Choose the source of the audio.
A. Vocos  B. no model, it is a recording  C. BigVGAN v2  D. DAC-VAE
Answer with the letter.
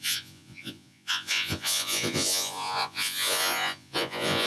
A